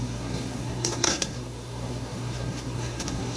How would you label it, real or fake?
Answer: fake